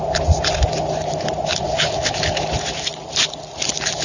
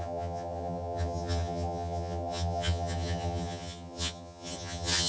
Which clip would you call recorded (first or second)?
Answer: first